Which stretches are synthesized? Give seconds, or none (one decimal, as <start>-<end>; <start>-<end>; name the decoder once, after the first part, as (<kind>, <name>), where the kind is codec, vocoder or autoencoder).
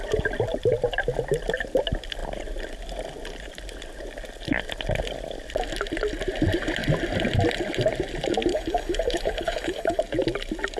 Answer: 8.5-10.0 (codec, HILCodec)